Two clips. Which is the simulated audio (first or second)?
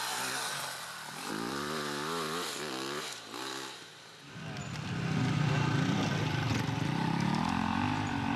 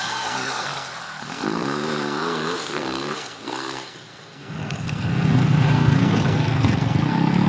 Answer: second